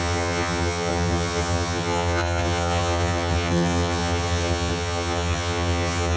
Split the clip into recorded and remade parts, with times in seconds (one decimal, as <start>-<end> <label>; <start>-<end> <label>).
0.0-6.2 remade